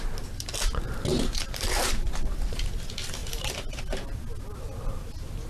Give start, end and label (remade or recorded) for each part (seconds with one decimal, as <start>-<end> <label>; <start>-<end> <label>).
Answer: 0.0-1.1 recorded; 1.1-2.7 remade; 2.7-3.2 recorded; 3.2-3.8 remade; 3.8-5.5 recorded